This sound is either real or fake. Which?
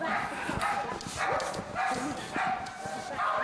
real